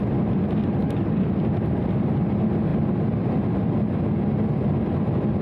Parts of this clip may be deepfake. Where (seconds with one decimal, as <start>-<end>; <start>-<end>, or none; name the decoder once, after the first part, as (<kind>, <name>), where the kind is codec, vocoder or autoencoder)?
0.8-1.3 (codec, DAC)